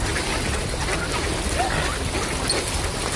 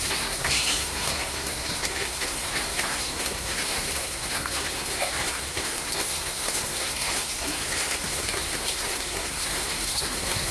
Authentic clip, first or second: first